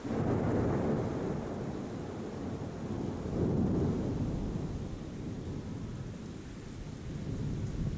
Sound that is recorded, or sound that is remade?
recorded